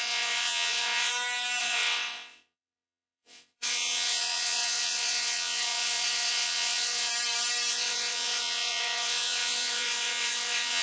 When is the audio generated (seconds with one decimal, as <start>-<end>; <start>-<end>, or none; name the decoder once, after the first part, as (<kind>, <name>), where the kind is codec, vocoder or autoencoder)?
0.0-1.1 (vocoder, WaveNeXt); 1.6-7.1; 7.7-10.8